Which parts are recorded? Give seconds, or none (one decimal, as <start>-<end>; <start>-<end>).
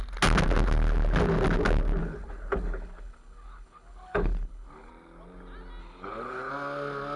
0.0-2.0; 4.9-5.8; 6.5-7.2